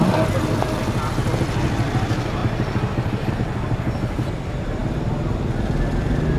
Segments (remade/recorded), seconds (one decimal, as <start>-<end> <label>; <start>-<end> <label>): 0.0-2.4 recorded; 2.4-3.3 remade; 3.3-6.4 recorded